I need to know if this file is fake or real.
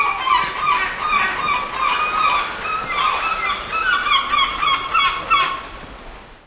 real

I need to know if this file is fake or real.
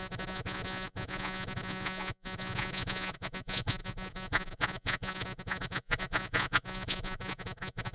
fake